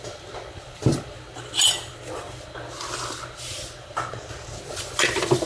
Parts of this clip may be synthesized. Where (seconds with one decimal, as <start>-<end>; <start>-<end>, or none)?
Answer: none